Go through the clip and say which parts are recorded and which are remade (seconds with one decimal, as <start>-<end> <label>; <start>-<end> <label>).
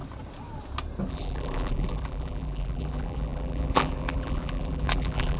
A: 0.0-1.1 recorded; 1.1-5.4 remade